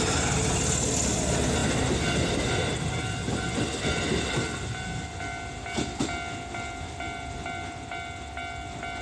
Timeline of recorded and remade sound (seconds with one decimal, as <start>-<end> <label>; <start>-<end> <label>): 0.0-9.0 recorded